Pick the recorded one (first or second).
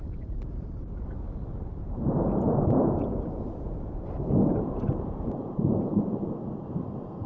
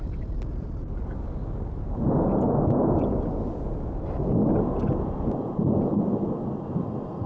second